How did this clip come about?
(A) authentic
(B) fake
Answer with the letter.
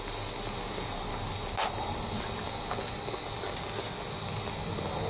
A